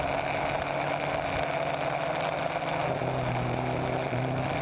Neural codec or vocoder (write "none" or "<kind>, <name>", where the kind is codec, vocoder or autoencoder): none